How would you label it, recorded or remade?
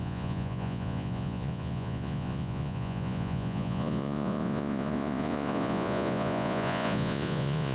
remade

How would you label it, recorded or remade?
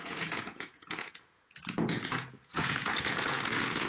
remade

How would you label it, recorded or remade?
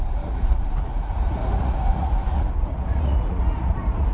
remade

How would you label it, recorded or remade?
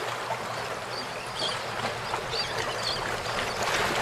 recorded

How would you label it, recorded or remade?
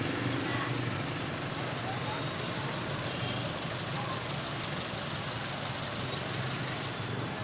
recorded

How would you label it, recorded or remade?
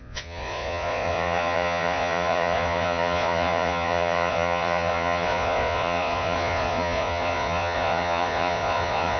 remade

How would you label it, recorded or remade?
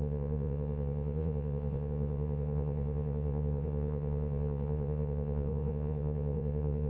remade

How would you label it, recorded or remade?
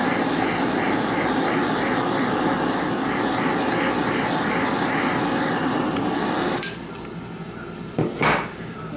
recorded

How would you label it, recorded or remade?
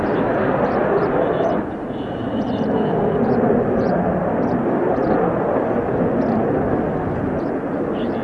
recorded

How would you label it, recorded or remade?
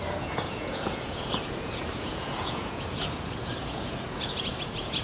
remade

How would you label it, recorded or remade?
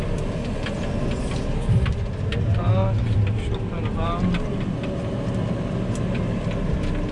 recorded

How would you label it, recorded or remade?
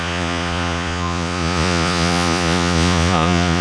remade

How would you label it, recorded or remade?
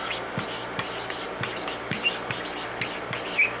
recorded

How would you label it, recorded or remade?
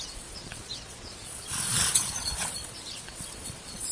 remade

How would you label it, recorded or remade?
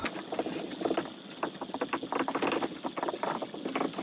recorded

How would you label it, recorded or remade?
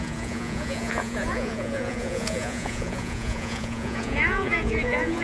remade